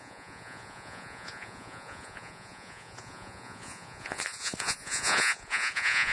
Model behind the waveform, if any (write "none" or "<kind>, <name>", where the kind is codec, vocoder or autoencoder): vocoder, Vocos